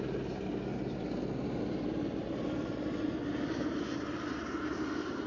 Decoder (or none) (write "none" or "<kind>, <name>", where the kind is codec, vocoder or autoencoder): none